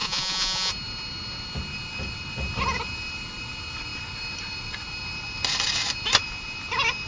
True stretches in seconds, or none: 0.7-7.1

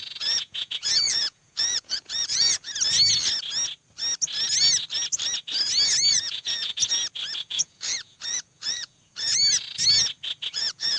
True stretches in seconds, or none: 2.7-6.1; 6.8-7.4; 9.4-10.5

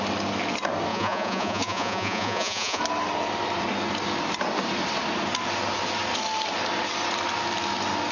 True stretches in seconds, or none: 0.0-0.9; 2.8-8.1

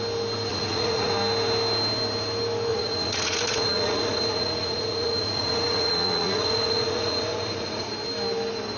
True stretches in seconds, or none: 0.0-0.5; 1.1-2.7; 7.9-8.8